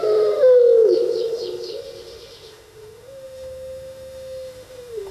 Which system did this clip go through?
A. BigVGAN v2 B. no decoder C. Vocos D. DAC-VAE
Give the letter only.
D